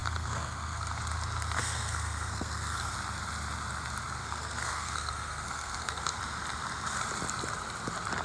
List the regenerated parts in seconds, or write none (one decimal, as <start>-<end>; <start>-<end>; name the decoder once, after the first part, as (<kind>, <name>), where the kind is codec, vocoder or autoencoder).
0.0-1.0 (codec, SNAC); 1.6-2.9; 4.2-6.2